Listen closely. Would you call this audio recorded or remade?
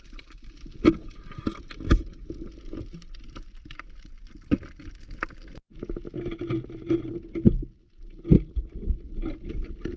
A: recorded